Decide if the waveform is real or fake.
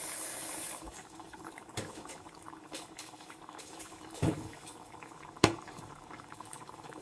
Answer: fake